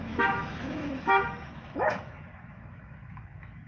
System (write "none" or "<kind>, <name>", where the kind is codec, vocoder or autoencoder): autoencoder, DAC-VAE